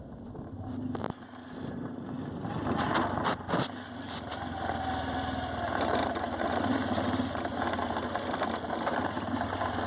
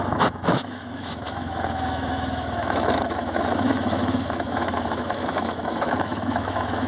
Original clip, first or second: first